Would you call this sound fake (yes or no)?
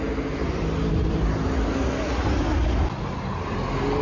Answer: no